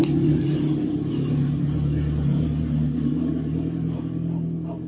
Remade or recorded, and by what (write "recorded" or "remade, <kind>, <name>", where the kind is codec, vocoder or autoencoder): recorded